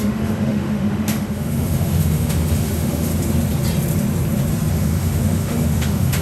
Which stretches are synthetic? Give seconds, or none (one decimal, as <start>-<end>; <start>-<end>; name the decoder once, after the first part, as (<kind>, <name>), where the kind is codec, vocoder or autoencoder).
0.0-3.1 (autoencoder, DAC-VAE); 4.7-6.2